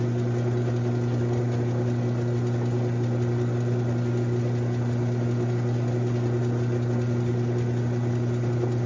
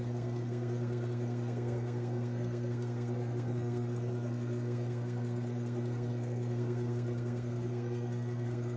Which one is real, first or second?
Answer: first